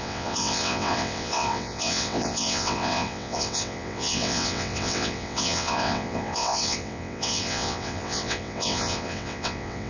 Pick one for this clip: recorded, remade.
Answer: remade